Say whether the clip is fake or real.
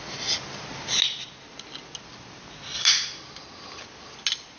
real